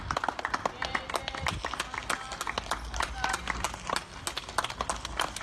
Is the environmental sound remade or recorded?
recorded